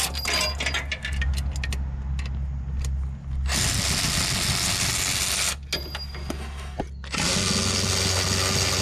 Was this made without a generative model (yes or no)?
yes